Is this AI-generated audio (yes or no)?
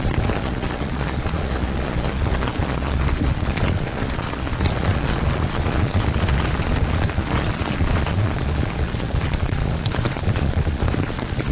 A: yes